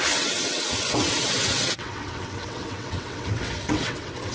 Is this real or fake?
fake